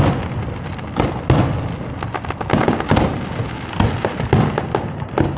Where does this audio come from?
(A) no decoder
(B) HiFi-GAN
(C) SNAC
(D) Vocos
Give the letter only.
A